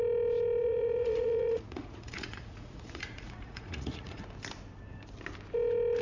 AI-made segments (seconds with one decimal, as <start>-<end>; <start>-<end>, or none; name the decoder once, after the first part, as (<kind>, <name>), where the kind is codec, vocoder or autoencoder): 0.6-4.2 (vocoder, Vocos)

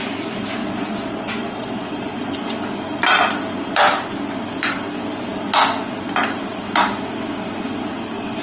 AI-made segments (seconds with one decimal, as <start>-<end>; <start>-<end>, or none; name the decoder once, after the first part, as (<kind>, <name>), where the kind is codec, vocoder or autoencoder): 0.6-2.2 (vocoder, Vocos)

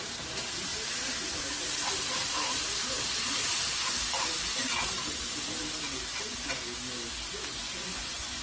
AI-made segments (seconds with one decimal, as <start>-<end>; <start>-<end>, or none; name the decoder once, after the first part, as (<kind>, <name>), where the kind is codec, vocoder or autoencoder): 7.5-8.4 (vocoder, Vocos)

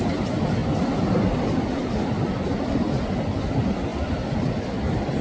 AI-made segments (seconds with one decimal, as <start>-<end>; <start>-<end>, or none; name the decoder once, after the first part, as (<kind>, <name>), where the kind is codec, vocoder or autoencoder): none

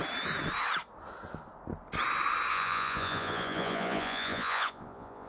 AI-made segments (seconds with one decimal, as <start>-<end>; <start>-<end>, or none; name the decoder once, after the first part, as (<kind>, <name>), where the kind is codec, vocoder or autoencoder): 2.5-5.3 (vocoder, Vocos)

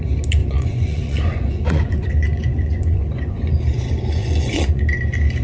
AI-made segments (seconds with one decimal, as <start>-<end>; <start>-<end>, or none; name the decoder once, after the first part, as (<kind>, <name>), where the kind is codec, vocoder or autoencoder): 0.4-3.6 (vocoder, Vocos); 4.2-4.8

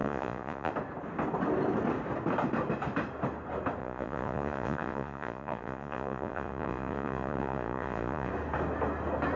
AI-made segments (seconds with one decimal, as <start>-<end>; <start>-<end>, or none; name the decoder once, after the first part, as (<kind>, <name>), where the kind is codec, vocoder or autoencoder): 0.0-0.7 (vocoder, Vocos); 3.8-8.3